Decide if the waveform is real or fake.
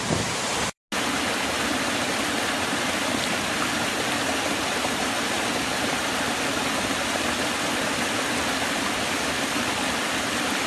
real